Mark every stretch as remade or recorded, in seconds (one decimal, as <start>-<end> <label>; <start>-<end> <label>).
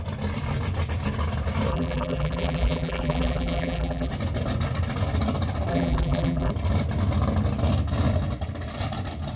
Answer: 0.0-1.7 recorded; 1.7-4.1 remade; 4.1-5.7 recorded; 5.7-6.5 remade; 6.5-9.4 recorded